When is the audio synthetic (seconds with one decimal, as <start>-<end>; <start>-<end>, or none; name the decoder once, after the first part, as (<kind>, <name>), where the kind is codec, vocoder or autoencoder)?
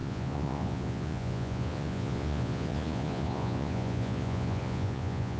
0.0-5.4 (vocoder, Vocos)